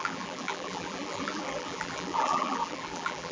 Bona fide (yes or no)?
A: no